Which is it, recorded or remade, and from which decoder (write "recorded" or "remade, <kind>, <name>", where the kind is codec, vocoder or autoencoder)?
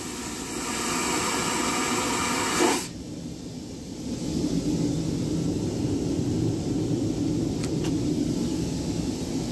recorded